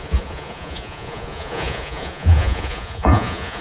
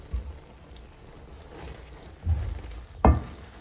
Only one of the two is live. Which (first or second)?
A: second